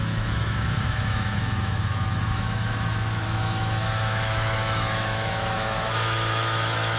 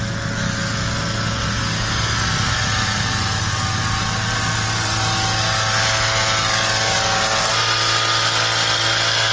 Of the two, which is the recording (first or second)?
second